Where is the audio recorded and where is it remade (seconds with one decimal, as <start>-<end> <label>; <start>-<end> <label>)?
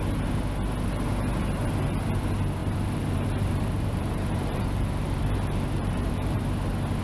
0.0-2.6 recorded; 2.6-6.4 remade; 6.4-7.0 recorded